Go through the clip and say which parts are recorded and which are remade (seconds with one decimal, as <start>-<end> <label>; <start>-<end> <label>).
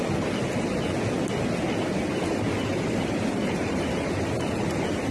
0.0-2.7 recorded; 2.7-3.9 remade; 3.9-5.1 recorded